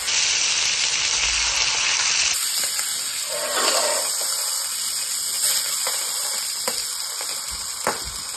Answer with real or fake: real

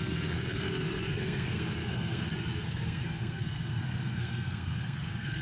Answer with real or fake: fake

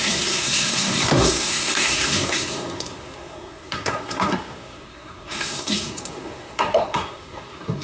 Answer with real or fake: fake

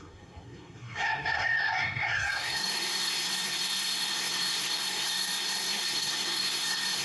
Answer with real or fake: fake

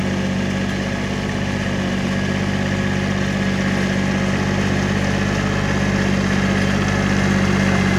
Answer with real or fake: real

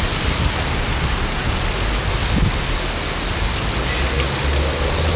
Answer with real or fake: real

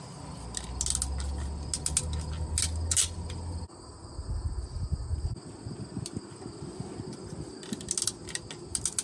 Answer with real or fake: real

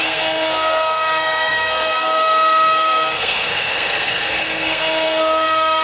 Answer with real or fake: fake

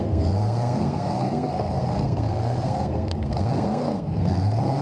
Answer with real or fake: fake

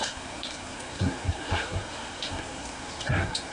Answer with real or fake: fake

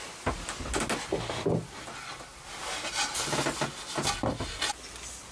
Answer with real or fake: real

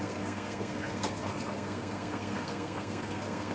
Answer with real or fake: fake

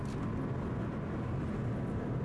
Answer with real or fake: real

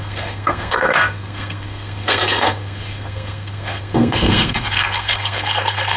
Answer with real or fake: fake